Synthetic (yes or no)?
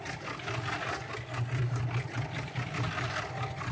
no